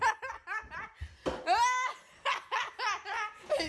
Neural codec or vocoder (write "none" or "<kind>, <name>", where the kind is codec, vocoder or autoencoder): none